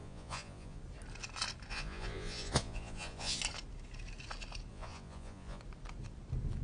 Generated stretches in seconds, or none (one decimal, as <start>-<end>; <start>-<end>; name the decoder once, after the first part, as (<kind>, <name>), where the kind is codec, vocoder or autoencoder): 0.0-0.8 (vocoder, Vocos); 1.7-3.4; 4.7-5.6